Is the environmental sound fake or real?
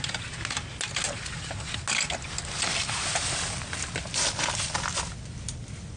real